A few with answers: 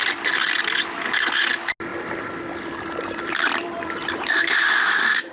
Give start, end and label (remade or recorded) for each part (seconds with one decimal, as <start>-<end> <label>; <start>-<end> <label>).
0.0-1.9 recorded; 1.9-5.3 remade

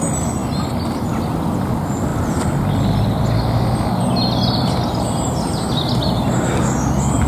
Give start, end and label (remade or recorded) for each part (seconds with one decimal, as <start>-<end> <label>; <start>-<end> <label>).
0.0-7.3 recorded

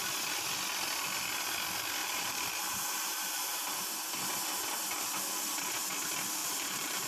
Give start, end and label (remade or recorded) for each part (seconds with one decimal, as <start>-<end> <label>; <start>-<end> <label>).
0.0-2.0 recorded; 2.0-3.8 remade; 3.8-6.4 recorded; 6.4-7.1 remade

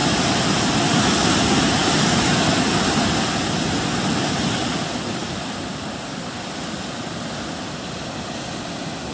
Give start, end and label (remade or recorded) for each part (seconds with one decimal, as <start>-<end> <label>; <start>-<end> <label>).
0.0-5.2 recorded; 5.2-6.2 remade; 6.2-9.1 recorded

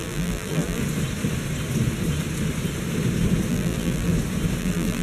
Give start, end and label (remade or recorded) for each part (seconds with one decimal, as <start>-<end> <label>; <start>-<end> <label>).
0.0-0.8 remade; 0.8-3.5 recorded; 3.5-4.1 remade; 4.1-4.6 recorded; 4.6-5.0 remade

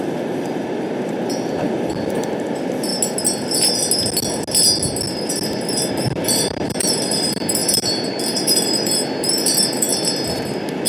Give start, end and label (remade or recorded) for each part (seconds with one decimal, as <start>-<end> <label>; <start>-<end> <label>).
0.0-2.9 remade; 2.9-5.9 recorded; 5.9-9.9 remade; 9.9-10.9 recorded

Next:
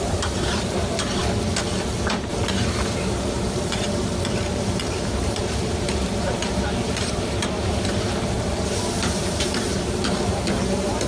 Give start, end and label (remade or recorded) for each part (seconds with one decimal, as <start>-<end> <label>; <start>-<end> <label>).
0.0-1.2 remade; 1.2-2.1 recorded; 2.1-11.1 remade

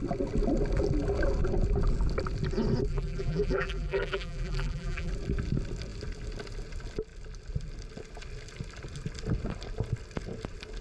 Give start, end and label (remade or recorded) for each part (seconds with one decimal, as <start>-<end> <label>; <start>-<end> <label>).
0.0-2.9 recorded; 2.9-5.1 remade; 5.1-10.8 recorded